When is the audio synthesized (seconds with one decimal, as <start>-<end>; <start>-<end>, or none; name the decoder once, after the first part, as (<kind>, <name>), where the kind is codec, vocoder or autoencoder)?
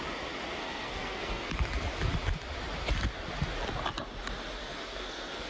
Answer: 0.6-1.5 (codec, SNAC); 4.6-5.5